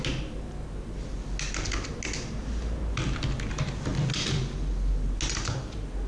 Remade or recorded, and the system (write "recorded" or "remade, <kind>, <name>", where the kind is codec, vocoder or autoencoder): recorded